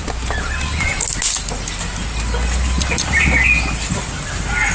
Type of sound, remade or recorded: recorded